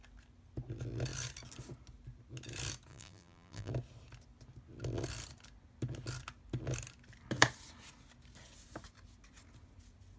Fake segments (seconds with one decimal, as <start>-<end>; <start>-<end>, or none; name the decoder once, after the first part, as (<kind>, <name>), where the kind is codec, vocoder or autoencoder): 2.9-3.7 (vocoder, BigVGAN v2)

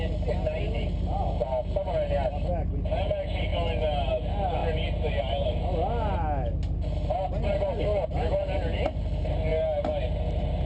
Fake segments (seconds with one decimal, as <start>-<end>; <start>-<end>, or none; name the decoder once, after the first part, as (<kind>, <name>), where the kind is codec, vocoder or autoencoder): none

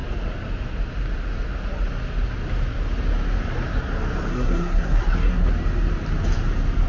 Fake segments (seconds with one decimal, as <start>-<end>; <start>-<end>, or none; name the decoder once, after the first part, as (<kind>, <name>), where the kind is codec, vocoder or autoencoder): 4.3-5.5 (codec, SNAC)